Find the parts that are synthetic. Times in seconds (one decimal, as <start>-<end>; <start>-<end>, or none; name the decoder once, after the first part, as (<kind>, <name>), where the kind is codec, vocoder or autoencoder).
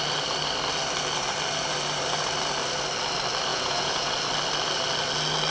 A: 3.5-4.1 (vocoder, Vocos)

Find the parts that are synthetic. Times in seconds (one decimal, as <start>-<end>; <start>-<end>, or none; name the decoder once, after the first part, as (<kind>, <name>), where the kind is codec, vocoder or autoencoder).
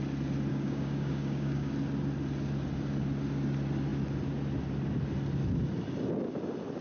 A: 0.5-1.7 (codec, DAC)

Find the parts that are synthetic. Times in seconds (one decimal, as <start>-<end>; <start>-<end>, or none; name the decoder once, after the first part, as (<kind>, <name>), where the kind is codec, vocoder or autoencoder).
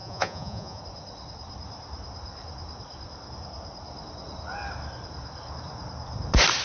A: 0.0-0.8 (vocoder, Vocos)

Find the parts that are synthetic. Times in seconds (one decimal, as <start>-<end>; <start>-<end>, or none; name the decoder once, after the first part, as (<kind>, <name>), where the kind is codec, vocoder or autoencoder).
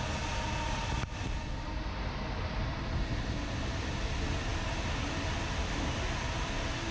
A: none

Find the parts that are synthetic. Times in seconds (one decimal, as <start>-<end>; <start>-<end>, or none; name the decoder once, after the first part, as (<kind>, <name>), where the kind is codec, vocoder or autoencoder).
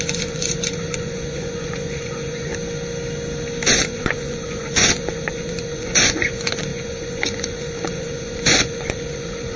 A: 0.0-2.5 (vocoder, Vocos); 3.7-9.6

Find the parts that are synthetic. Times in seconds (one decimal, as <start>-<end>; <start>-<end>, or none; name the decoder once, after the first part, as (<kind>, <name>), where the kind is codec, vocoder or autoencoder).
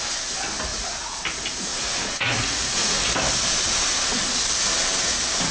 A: 0.7-1.2 (vocoder, Vocos); 1.7-3.0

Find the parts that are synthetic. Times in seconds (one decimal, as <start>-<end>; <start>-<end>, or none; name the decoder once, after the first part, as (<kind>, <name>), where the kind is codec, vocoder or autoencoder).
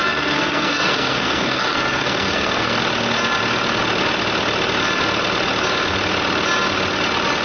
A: 0.0-2.8 (codec, SNAC)